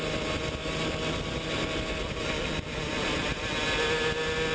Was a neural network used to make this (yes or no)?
no